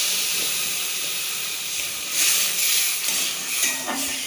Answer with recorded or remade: remade